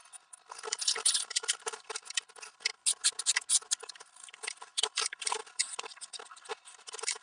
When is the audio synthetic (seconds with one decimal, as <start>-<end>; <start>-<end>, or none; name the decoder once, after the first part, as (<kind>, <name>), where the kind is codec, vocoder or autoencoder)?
0.0-2.8 (vocoder, BigVGAN v2); 3.8-7.2